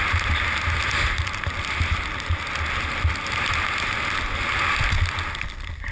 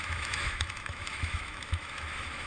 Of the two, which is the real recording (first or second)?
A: first